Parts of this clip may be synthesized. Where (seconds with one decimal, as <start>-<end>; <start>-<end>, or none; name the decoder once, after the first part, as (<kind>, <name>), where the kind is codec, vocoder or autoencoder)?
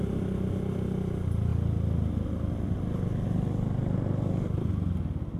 none